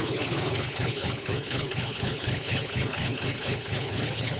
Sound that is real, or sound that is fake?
fake